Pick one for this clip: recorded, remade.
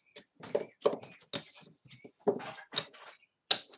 recorded